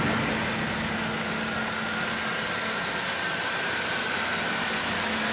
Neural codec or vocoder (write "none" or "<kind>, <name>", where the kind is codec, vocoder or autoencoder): none